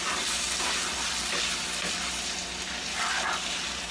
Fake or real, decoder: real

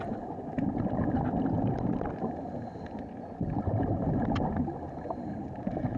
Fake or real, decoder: real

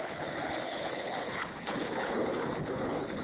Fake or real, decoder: fake, codec, HILCodec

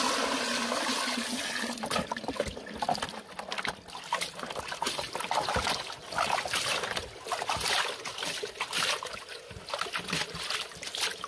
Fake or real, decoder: real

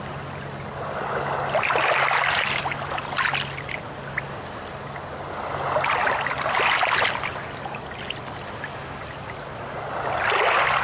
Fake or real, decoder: real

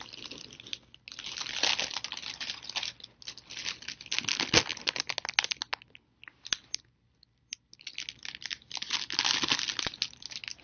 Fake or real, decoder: real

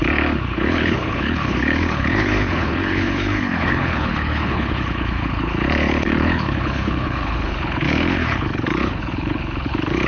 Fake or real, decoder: fake, codec, HILCodec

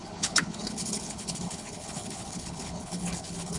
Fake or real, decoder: fake, codec, HILCodec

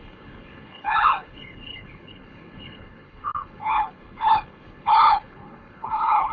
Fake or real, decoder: fake, codec, HILCodec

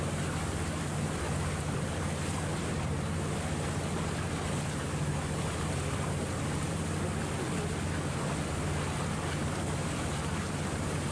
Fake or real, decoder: real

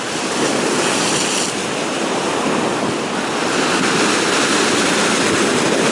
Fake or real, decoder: real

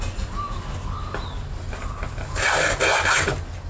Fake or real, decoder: real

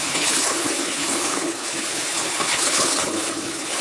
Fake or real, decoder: fake, codec, HILCodec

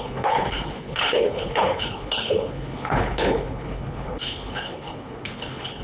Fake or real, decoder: fake, codec, HILCodec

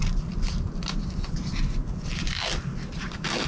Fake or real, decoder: real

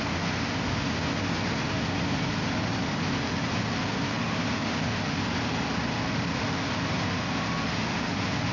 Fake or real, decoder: real